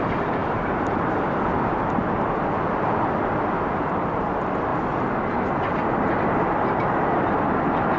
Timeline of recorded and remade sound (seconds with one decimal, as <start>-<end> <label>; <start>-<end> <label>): 0.0-8.0 recorded